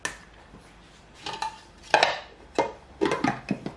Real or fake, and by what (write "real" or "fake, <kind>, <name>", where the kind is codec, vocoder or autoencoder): real